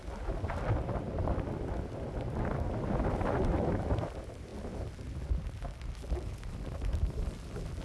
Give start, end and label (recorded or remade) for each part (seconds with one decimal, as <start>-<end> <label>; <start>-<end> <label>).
0.0-7.8 recorded